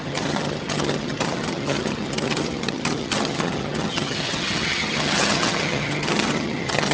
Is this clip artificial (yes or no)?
yes